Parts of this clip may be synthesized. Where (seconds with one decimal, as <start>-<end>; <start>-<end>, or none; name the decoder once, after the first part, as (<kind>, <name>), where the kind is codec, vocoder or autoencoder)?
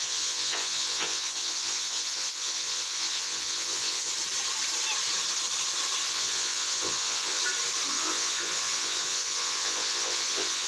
0.0-4.1 (vocoder, Vocos); 6.1-7.4; 7.9-10.7